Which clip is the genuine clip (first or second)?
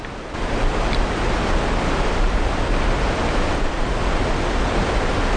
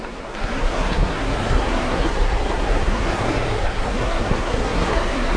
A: first